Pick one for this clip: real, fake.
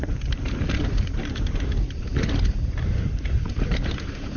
fake